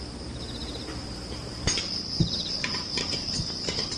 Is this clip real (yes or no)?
yes